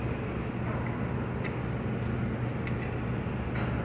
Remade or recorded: recorded